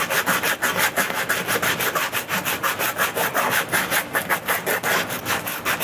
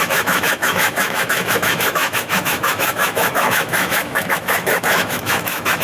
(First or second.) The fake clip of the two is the second